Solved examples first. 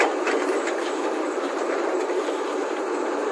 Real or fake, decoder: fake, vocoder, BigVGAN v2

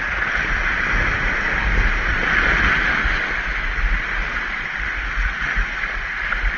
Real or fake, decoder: real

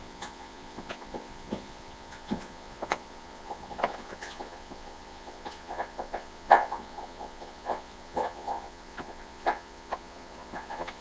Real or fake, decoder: fake, vocoder, Vocos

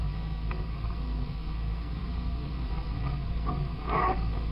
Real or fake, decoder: fake, codec, SNAC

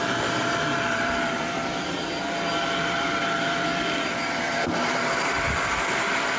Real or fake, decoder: fake, vocoder, BigVGAN v2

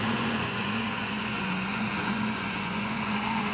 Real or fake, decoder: fake, vocoder, Vocos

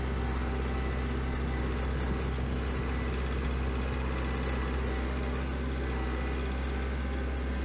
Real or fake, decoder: real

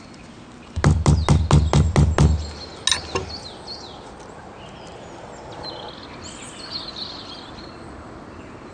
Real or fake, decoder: real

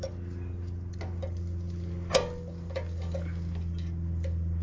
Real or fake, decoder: real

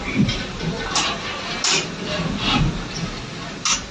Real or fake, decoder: real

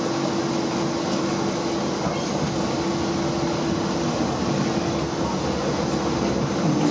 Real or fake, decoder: real